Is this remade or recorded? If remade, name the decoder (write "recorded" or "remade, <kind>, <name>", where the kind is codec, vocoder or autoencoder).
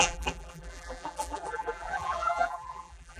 remade, vocoder, BigVGAN v2